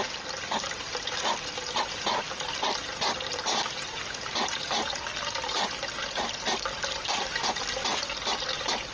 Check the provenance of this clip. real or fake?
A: real